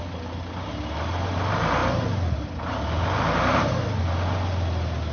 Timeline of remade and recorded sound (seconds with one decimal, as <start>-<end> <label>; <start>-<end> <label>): 0.0-5.1 recorded